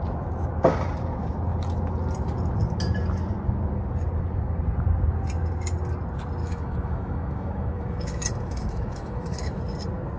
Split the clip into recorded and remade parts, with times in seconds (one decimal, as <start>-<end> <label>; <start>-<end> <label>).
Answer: 0.0-6.4 recorded; 6.4-9.6 remade; 9.6-10.2 recorded